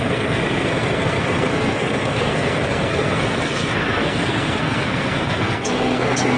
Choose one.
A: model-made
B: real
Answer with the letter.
A